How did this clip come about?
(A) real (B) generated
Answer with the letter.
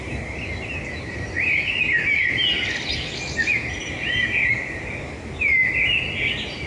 A